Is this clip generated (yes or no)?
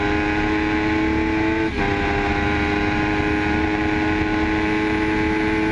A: no